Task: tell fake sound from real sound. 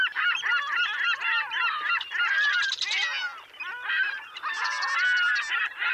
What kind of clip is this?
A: real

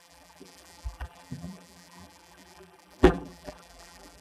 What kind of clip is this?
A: fake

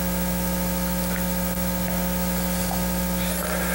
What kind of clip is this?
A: real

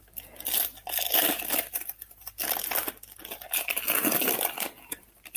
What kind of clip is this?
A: fake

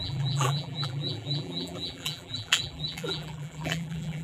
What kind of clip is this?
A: fake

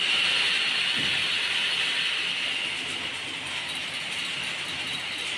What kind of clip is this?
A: real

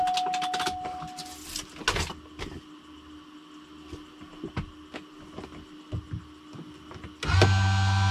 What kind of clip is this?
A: real